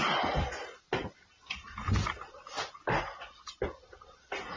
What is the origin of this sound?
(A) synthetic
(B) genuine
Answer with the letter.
B